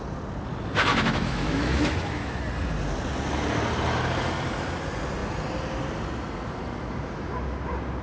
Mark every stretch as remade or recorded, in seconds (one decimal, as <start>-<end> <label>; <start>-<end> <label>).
0.0-0.9 recorded; 0.9-2.4 remade; 2.4-8.0 recorded